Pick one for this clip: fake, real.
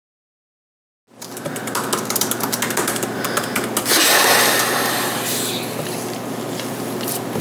real